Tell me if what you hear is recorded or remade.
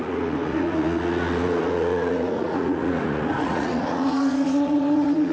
remade